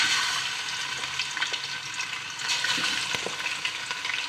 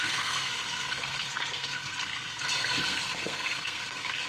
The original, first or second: first